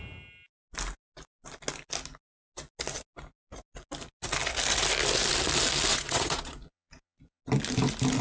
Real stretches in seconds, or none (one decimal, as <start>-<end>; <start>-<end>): 0.0-5.9; 7.4-8.2